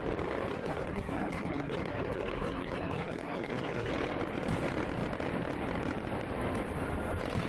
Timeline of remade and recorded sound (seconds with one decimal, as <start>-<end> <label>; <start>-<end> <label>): 0.0-0.5 recorded; 0.5-3.9 remade; 3.9-7.5 recorded